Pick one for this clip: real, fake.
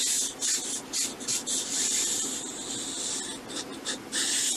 real